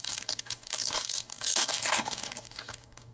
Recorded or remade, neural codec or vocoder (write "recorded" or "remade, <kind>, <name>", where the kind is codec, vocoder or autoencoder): remade, codec, DAC